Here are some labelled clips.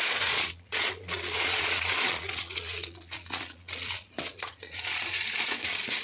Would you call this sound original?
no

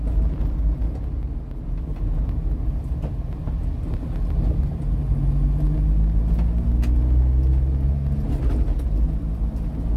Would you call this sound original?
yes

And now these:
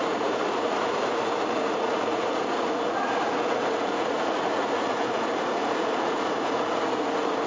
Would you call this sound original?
no